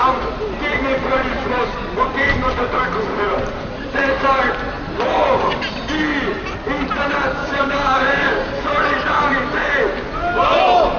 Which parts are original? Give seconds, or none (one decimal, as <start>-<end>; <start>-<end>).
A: 0.0-7.4; 8.5-11.0